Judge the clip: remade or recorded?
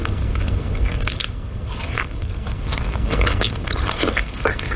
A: remade